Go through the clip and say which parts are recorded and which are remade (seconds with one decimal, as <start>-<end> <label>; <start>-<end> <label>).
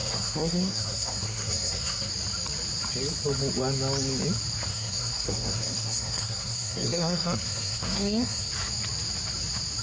0.0-2.1 remade; 2.1-4.7 recorded; 4.7-8.5 remade; 8.5-9.8 recorded